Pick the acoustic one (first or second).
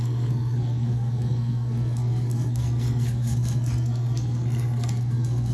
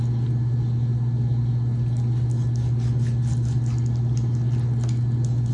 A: second